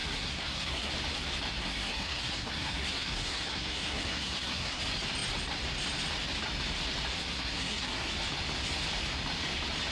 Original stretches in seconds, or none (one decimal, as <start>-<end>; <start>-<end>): 0.9-1.6; 4.8-7.2; 8.1-9.9